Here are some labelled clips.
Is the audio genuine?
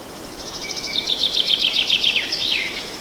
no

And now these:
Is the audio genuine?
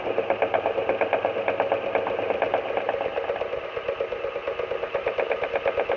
yes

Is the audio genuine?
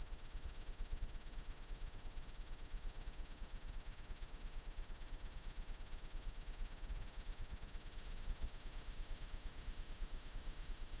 no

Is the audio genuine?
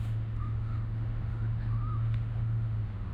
no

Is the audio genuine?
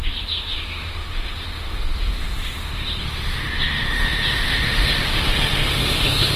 no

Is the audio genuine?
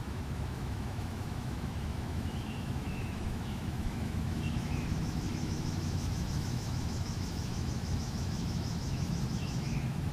no